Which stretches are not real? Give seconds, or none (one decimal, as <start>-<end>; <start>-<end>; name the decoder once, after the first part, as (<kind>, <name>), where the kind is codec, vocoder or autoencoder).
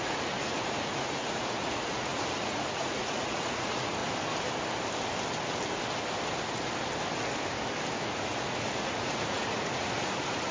0.0-4.0 (vocoder, Vocos); 8.0-10.5